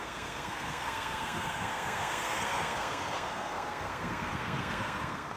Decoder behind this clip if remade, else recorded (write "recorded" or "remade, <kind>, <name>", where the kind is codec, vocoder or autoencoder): remade, codec, SNAC